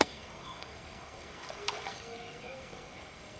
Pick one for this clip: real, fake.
fake